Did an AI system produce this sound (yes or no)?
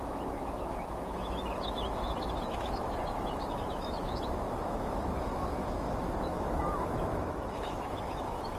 yes